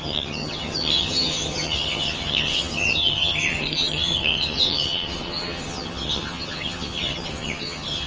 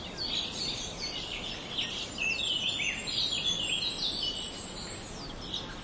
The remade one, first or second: first